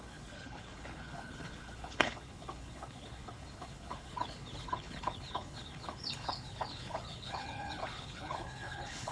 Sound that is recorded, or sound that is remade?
remade